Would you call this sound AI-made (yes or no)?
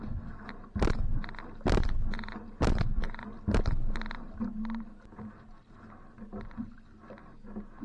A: no